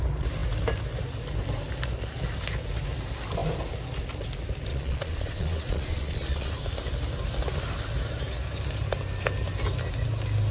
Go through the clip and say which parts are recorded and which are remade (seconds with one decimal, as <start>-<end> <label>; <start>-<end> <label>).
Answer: 0.0-4.7 recorded; 4.7-6.5 remade; 6.5-10.5 recorded

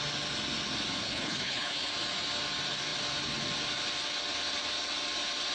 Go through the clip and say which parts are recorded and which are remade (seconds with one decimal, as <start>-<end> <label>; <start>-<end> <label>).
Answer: 0.0-1.0 recorded; 1.0-1.9 remade; 1.9-5.5 recorded

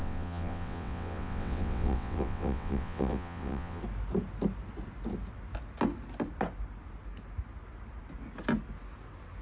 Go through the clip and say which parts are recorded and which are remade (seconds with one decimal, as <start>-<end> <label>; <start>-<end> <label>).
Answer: 0.0-3.8 remade; 3.8-9.4 recorded

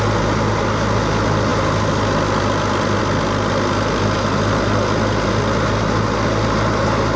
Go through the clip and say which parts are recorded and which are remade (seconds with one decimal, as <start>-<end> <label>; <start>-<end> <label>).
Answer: 0.0-7.2 recorded

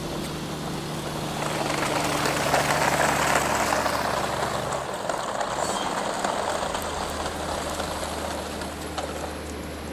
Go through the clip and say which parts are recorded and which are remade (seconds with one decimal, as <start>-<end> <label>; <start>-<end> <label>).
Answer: 0.0-9.9 recorded

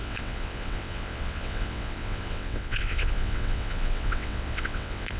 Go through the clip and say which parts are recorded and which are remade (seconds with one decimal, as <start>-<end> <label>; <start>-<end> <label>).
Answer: 0.0-5.2 remade

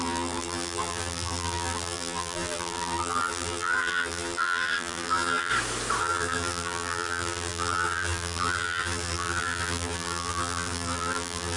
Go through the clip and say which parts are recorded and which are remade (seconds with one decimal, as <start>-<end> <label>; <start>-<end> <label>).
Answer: 0.0-5.5 remade; 5.5-6.0 recorded; 6.0-11.6 remade